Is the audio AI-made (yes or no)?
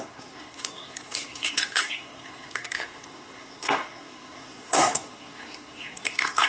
yes